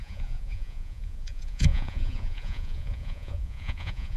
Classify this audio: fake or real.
fake